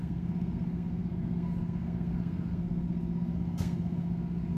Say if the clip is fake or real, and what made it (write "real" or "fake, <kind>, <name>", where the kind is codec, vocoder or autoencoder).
fake, codec, SNAC